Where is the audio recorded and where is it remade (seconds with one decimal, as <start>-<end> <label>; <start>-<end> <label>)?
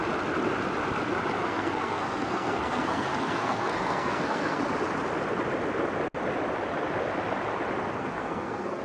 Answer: 0.0-1.4 recorded; 1.4-4.6 remade; 4.6-8.0 recorded; 8.0-8.8 remade